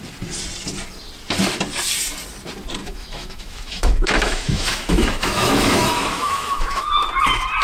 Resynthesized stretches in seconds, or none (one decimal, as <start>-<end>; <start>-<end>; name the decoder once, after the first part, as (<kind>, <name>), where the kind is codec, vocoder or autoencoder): 2.8-6.9 (autoencoder, DAC-VAE)